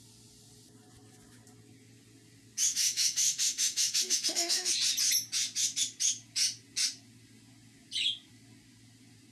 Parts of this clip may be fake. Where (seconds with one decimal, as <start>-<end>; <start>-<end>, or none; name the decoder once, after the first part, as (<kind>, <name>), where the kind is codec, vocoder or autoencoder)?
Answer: 2.7-4.7 (autoencoder, DAC-VAE)